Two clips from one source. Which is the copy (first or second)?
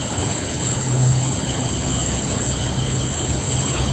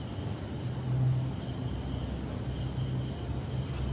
first